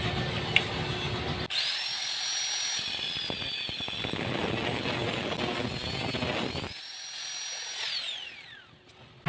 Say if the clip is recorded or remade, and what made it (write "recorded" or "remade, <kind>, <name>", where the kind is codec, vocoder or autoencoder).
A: recorded